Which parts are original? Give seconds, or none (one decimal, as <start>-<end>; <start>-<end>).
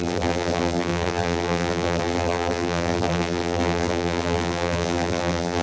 none